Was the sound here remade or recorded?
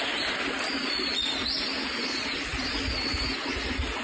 recorded